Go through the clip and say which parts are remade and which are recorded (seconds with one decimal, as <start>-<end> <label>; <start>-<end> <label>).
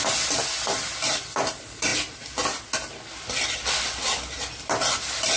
0.0-5.4 recorded